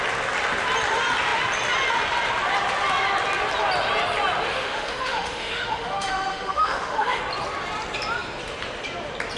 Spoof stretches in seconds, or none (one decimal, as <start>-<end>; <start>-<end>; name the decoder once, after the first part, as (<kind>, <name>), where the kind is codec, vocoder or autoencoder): 4.5-7.2 (autoencoder, DAC-VAE)